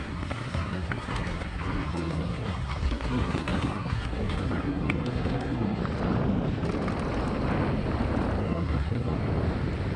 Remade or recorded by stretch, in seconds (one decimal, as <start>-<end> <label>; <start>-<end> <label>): 0.0-5.8 remade; 5.8-8.4 recorded; 8.4-9.2 remade; 9.2-10.0 recorded